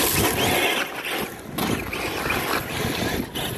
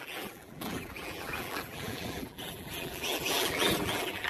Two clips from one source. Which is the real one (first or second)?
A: first